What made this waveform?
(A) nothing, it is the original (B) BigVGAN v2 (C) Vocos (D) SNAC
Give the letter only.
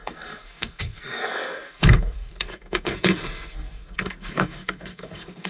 D